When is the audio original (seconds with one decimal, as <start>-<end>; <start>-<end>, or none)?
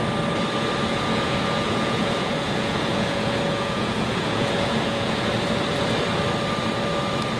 0.0-0.9; 5.3-7.4